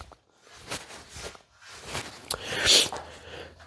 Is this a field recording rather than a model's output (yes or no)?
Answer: yes